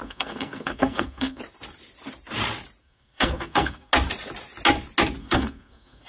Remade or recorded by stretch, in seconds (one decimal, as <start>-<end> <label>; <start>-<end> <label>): 0.0-1.4 remade; 1.4-2.8 recorded; 2.8-3.9 remade; 3.9-5.2 recorded; 5.2-6.1 remade